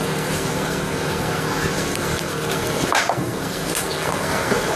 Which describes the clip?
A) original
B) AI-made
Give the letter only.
B